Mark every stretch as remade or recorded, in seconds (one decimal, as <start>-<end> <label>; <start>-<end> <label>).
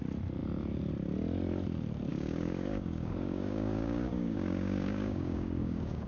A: 0.0-2.1 recorded; 2.1-6.1 remade